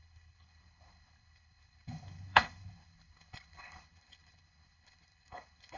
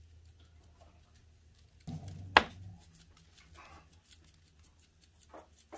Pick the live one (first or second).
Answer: second